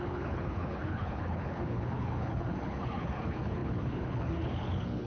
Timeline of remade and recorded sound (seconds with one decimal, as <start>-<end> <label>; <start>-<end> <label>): 0.0-5.1 remade